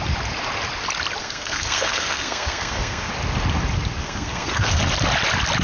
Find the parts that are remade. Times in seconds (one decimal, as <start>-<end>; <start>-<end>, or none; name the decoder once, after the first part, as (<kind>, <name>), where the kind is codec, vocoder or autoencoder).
1.2-3.1 (codec, SNAC); 4.0-4.8